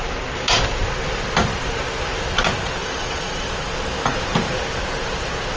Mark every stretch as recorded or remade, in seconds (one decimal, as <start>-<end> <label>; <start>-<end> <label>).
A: 0.0-2.8 recorded; 2.8-3.5 remade; 3.5-5.6 recorded